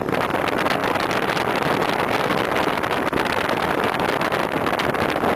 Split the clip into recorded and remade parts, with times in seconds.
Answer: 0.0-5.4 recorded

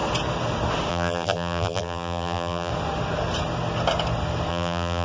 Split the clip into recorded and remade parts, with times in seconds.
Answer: 0.0-0.9 recorded; 0.9-2.7 remade; 2.7-4.5 recorded; 4.5-5.0 remade

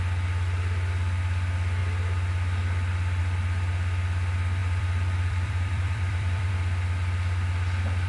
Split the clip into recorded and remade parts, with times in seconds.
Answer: 0.0-4.6 recorded; 4.6-6.5 remade; 6.5-8.1 recorded

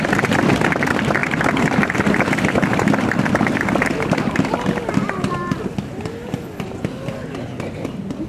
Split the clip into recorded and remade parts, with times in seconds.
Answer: 0.0-8.3 recorded

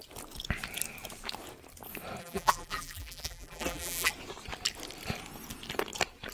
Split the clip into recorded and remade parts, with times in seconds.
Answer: 0.0-2.2 recorded; 2.2-4.1 remade; 4.1-6.3 recorded

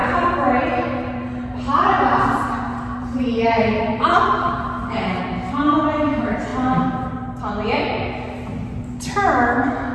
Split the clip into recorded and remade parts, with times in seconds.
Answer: 0.0-5.2 remade; 5.2-9.9 recorded

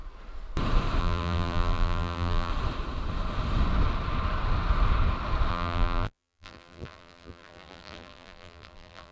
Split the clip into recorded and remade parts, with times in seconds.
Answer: 0.0-1.0 recorded; 1.0-2.5 remade; 2.5-5.5 recorded; 5.5-9.1 remade

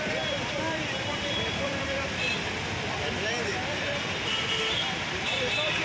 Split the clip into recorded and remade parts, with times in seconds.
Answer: 0.0-5.8 remade